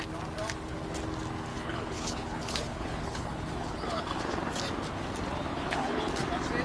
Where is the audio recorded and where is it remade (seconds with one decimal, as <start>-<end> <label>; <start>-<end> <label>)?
0.0-1.5 recorded; 1.5-4.0 remade; 4.0-5.5 recorded; 5.5-6.1 remade; 6.1-6.6 recorded